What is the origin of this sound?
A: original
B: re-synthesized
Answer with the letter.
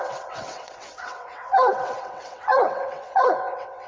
B